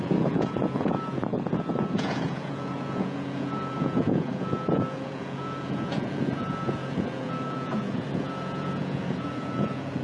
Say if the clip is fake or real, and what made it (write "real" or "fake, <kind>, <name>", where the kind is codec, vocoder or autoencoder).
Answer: fake, vocoder, Vocos